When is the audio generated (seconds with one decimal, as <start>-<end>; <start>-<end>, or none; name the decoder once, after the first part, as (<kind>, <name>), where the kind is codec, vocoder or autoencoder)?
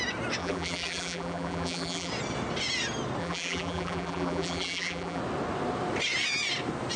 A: 0.4-2.1 (vocoder, BigVGAN v2); 3.2-5.2